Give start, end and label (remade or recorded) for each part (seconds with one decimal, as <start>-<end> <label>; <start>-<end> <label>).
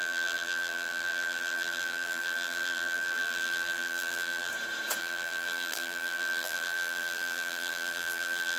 0.0-4.5 remade; 4.5-5.0 recorded; 5.0-8.6 remade